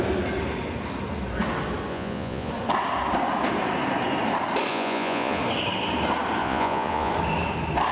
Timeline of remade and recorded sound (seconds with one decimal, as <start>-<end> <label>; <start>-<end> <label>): 0.0-1.9 recorded; 1.9-2.5 remade; 2.5-4.7 recorded; 4.7-5.4 remade; 5.4-6.4 recorded; 6.4-7.1 remade; 7.1-7.9 recorded